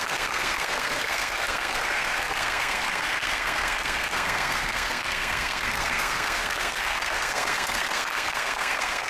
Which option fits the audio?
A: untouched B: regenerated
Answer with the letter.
B